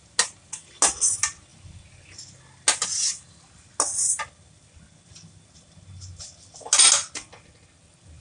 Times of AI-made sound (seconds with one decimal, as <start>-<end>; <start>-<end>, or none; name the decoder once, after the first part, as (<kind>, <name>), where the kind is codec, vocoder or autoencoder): none